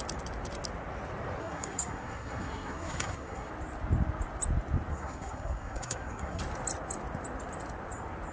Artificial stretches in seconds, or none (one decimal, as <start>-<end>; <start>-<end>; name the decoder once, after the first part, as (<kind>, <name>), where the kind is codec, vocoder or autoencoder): 1.4-3.5 (codec, SNAC); 4.9-6.4